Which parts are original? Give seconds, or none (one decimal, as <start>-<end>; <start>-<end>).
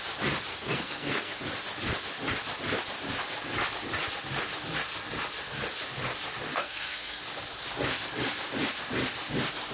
0.0-0.5; 1.5-6.5; 7.2-9.7